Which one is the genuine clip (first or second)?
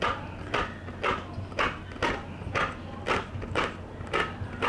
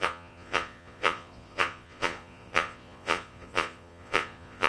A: first